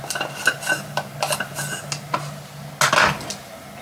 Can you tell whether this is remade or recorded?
recorded